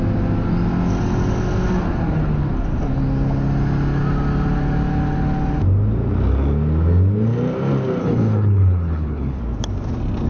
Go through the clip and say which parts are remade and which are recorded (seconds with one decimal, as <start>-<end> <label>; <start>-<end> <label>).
0.0-8.0 recorded; 8.0-9.4 remade; 9.4-10.3 recorded